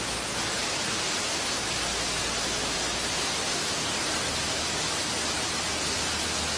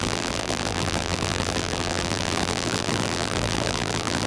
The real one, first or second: first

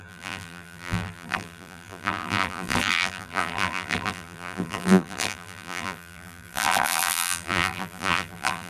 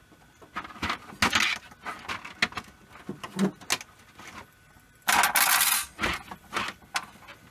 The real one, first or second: second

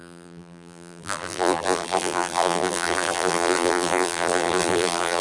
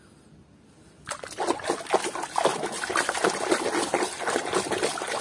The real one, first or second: second